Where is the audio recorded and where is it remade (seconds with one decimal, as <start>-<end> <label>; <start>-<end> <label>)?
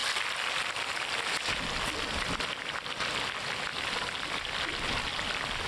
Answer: 0.0-5.7 recorded